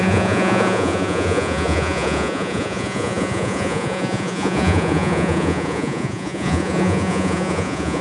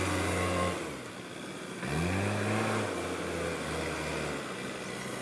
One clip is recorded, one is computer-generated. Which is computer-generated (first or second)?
first